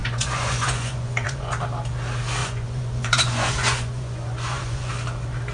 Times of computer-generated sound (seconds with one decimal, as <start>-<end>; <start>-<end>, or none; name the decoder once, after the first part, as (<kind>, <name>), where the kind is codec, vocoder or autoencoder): 0.0-1.5 (vocoder, Vocos); 2.4-4.9